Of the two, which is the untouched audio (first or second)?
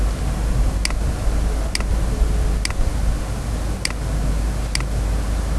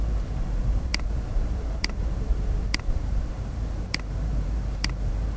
first